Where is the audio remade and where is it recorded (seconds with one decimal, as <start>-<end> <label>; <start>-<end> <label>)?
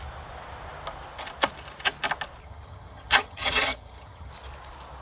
0.0-2.4 recorded; 2.4-4.3 remade; 4.3-5.0 recorded